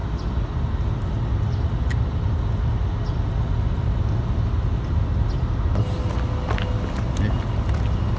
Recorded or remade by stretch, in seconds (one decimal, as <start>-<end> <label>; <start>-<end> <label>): 0.0-8.2 recorded